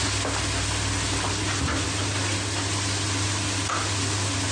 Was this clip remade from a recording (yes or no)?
no